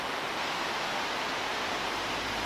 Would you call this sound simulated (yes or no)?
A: no